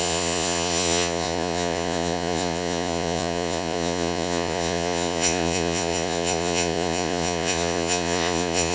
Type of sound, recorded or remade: remade